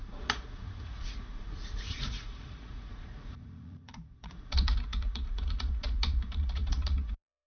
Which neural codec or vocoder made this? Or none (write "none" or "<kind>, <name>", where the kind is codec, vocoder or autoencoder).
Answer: vocoder, Vocos